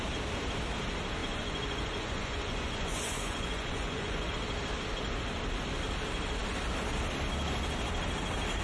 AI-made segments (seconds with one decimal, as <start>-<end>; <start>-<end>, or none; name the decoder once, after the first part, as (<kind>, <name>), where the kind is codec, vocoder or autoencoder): 1.2-4.3 (vocoder, Vocos)